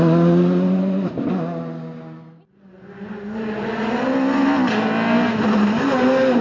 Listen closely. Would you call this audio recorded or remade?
recorded